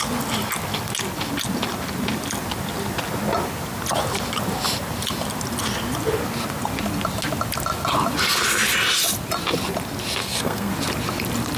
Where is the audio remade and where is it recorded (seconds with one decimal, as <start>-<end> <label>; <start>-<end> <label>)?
0.0-10.2 recorded; 10.2-10.7 remade; 10.7-11.6 recorded